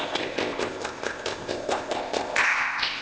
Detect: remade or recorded remade